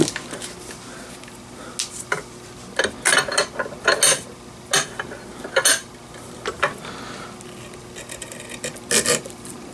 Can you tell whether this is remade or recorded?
recorded